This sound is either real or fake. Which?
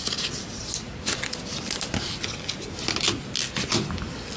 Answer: real